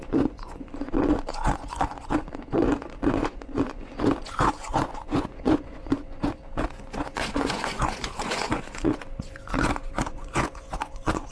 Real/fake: fake